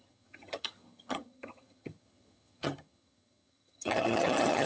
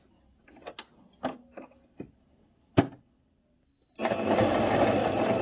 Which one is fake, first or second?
first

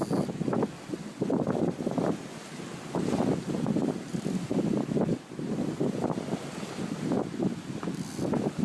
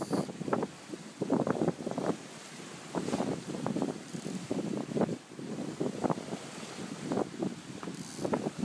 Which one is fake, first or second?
second